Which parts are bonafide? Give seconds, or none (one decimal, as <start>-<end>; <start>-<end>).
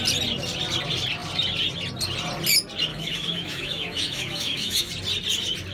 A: 0.0-2.9; 4.9-5.7